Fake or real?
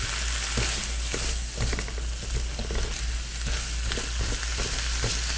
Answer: real